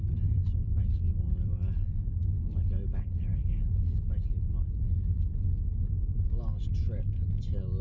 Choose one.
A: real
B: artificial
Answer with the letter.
A